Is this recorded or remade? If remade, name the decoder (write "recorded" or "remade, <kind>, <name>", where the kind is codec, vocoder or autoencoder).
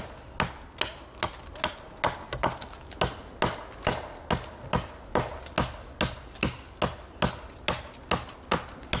recorded